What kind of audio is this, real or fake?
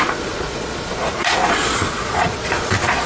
fake